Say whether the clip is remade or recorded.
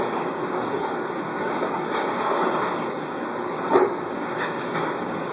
remade